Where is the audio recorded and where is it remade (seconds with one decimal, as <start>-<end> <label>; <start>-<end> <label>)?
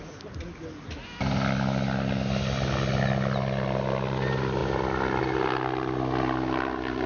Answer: 0.0-7.1 recorded